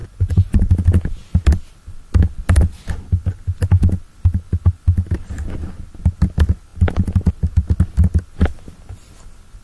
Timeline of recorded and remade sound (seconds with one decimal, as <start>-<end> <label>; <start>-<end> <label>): 0.0-0.7 remade; 0.7-9.6 recorded